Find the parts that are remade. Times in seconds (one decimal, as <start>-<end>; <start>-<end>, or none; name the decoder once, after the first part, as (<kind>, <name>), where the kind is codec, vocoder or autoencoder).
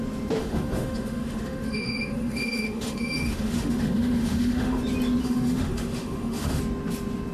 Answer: 0.4-4.8 (autoencoder, DAC-VAE); 5.2-6.6